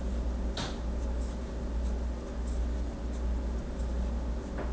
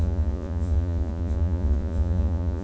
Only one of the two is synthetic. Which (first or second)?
second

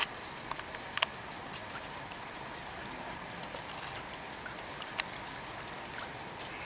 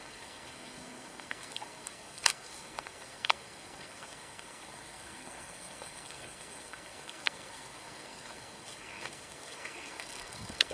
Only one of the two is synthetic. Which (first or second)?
second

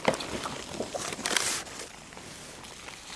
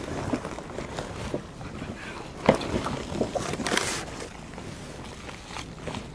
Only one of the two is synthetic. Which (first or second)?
first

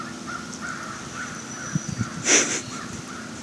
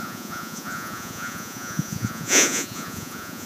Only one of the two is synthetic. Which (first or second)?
second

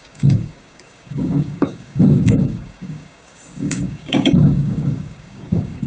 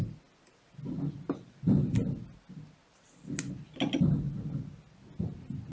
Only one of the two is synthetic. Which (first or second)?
first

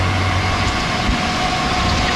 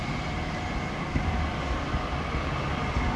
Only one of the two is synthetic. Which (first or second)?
first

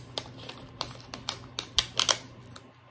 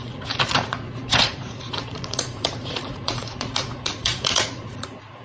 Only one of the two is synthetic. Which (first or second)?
second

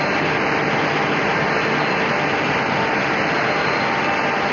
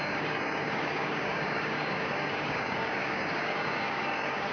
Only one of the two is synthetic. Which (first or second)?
second